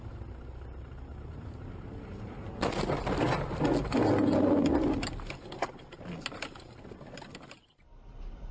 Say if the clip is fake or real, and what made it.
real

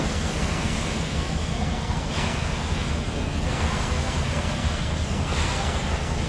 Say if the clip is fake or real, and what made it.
fake, codec, SNAC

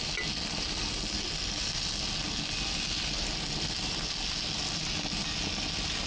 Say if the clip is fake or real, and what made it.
real